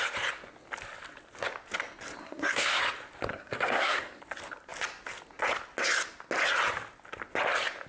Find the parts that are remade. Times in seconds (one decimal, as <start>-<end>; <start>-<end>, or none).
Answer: 2.2-2.8; 3.3-4.2